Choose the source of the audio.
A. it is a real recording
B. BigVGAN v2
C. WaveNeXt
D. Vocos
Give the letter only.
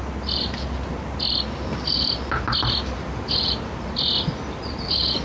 A